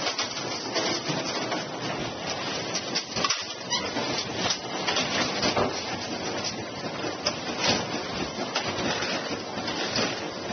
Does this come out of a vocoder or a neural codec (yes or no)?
no